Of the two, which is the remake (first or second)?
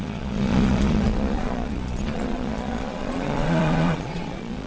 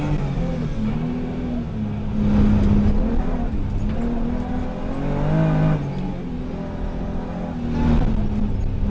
first